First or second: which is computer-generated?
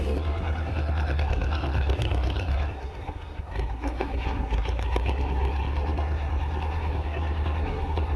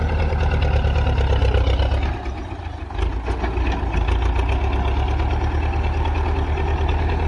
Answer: first